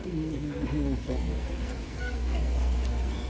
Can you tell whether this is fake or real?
fake